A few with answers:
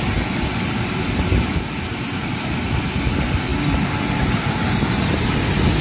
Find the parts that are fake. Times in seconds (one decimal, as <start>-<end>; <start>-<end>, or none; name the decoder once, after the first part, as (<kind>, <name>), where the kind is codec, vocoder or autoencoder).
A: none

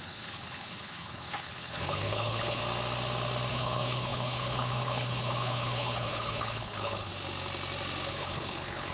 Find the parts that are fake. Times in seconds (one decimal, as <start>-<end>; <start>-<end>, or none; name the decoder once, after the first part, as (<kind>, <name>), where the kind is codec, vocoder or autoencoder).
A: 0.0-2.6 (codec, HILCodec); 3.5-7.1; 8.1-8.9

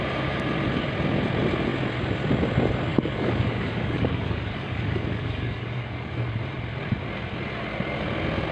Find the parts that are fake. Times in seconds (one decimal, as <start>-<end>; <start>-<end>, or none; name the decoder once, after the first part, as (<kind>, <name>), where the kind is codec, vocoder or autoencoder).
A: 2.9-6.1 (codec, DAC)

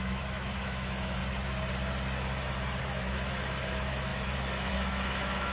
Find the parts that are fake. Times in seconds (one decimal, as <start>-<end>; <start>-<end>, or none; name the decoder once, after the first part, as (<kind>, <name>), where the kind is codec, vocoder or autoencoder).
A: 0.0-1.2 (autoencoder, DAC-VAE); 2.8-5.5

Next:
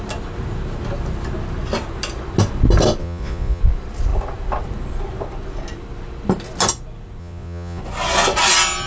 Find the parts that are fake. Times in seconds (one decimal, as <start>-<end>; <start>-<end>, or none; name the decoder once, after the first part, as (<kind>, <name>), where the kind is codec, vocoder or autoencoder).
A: 3.0-3.6 (vocoder, Vocos); 7.2-7.8

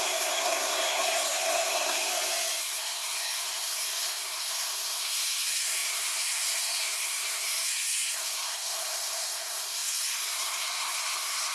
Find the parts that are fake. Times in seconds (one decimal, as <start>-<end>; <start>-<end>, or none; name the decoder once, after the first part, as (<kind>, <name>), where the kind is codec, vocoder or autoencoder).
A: 0.0-2.1 (codec, SNAC); 2.6-11.5